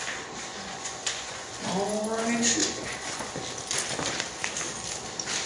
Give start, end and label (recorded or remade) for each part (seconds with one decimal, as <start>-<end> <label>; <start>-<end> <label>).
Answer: 0.0-0.5 recorded; 0.5-1.7 remade; 1.7-2.6 recorded; 2.6-3.3 remade; 3.3-5.5 recorded